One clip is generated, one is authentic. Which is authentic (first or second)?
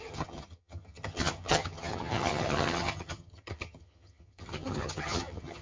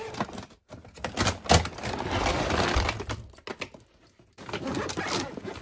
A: second